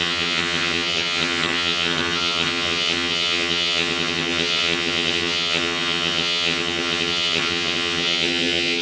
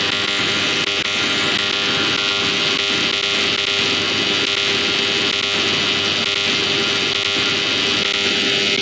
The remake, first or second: first